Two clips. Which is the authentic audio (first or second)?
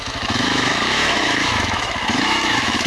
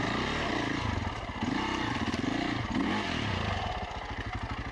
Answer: second